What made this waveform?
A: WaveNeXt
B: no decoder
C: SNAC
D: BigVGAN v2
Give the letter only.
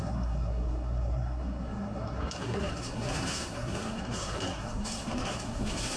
C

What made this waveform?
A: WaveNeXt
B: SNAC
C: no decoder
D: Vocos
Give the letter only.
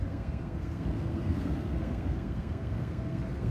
B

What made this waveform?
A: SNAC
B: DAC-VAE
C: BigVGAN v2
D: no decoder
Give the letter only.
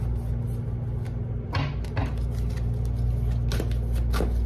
D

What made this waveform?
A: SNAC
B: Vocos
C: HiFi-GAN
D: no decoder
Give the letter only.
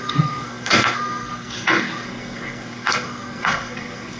A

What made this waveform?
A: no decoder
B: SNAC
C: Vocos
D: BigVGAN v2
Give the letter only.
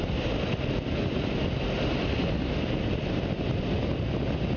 A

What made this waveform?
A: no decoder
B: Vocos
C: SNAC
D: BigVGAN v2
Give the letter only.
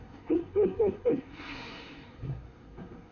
C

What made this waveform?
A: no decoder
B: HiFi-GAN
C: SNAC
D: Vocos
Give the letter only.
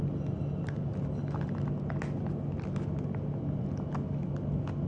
A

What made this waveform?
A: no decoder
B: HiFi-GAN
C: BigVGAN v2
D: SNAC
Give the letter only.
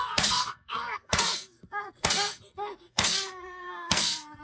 D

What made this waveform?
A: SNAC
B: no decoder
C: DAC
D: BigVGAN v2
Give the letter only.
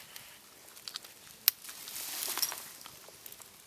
B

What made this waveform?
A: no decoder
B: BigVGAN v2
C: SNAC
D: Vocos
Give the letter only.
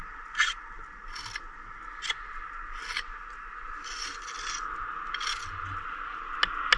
A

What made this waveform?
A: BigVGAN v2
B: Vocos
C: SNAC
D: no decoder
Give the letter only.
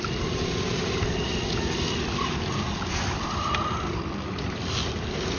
D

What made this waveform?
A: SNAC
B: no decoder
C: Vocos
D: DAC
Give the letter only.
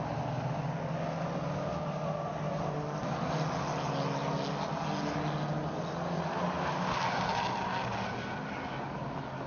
B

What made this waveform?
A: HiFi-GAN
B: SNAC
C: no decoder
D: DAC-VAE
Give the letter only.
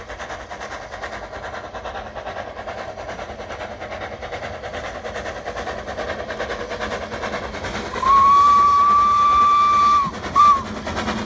C